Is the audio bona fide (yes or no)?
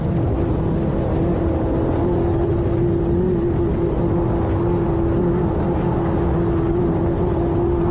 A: yes